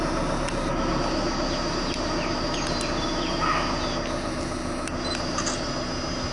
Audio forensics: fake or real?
real